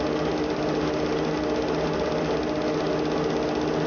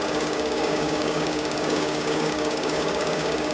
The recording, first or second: first